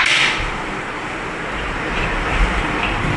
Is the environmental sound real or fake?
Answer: real